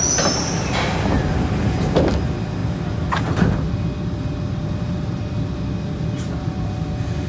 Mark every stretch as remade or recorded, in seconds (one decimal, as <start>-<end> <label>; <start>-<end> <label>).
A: 0.0-7.3 recorded